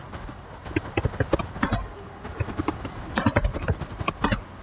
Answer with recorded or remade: recorded